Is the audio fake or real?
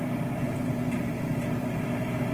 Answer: fake